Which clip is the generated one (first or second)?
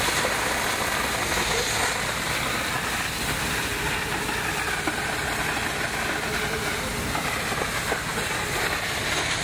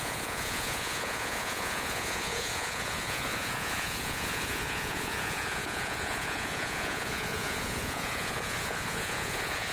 second